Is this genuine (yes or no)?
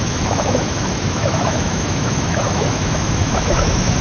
no